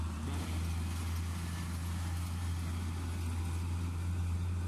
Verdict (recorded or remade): recorded